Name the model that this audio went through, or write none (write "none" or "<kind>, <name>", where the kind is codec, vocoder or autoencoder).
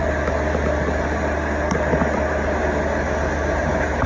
none